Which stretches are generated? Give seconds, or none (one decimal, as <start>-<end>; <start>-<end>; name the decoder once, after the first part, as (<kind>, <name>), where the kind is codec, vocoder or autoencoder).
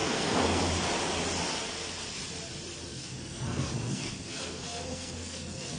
0.0-0.6 (codec, SNAC); 2.9-5.8